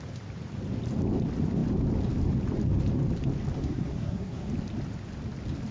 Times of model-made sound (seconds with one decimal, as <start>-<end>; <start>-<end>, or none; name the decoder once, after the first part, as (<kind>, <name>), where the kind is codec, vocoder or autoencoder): 3.7-4.5 (codec, SNAC)